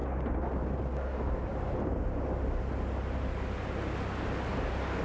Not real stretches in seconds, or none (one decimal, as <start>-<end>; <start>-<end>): none